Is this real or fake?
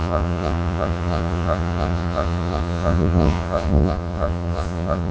fake